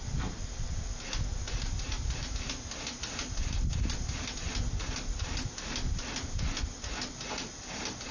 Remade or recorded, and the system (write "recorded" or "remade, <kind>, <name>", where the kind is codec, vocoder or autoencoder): recorded